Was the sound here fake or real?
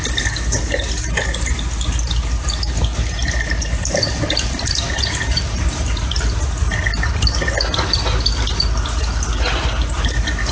real